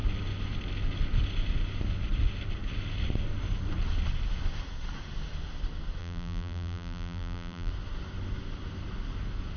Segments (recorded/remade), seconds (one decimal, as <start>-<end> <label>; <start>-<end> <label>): 0.0-6.0 recorded; 6.0-7.7 remade; 7.7-9.6 recorded